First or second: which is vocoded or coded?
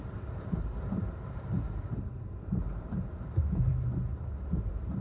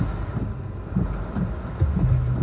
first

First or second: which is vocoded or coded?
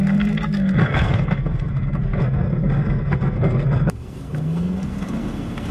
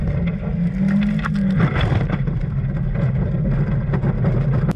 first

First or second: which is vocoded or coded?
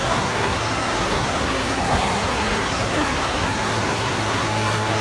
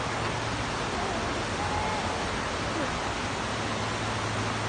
first